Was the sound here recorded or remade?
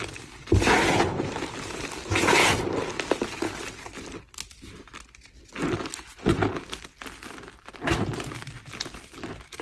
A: recorded